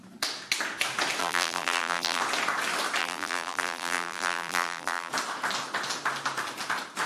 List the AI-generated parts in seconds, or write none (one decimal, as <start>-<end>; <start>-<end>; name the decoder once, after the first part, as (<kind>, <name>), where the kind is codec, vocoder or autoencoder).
1.2-2.2 (vocoder, BigVGAN v2); 3.0-5.1